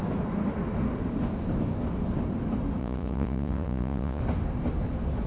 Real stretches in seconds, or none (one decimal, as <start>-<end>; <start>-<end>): 0.0-2.8; 4.2-5.3